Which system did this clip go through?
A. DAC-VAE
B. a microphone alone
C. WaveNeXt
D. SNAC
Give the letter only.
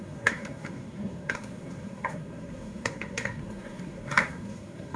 D